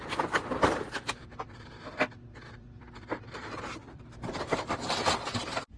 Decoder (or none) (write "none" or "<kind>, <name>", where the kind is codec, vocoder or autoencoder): vocoder, BigVGAN v2